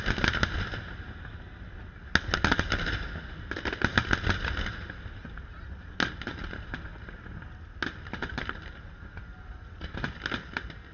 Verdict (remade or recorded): recorded